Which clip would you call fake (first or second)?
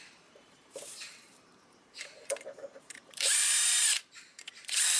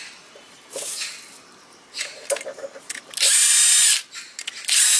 first